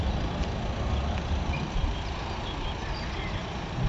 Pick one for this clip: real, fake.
real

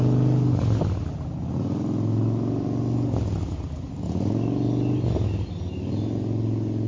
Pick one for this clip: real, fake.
real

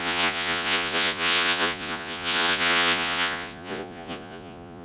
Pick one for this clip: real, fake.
fake